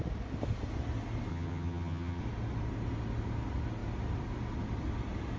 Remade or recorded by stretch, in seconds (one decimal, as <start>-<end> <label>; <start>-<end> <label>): 0.0-1.3 recorded; 1.3-2.2 remade; 2.2-5.4 recorded